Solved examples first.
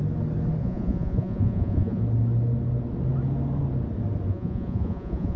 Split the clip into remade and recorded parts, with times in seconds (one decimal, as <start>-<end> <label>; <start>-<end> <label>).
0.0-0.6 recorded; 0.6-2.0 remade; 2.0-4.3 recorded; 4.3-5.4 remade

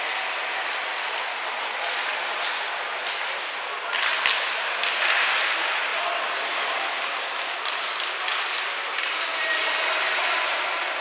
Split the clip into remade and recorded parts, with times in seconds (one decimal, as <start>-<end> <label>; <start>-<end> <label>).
0.0-11.0 recorded

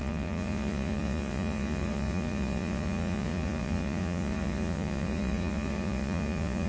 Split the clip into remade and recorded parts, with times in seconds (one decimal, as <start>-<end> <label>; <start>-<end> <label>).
0.0-6.7 remade

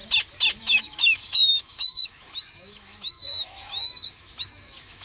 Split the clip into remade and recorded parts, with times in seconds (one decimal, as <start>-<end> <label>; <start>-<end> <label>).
0.0-0.6 recorded; 0.6-5.0 remade

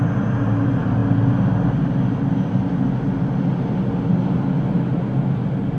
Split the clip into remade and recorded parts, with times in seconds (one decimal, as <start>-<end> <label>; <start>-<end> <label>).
0.0-5.8 recorded

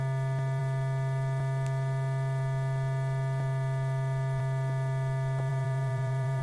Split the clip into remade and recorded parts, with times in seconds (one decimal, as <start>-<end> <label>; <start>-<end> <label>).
0.0-5.5 recorded; 5.5-6.4 remade

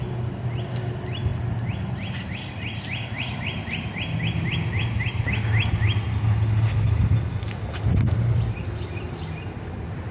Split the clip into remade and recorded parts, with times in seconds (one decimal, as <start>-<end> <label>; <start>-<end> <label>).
0.0-10.1 recorded